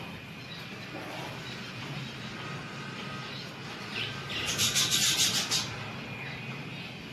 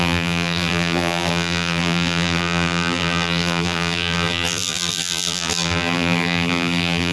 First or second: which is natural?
first